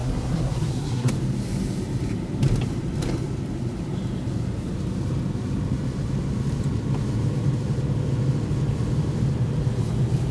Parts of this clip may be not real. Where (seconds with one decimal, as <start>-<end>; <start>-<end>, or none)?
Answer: 0.0-1.1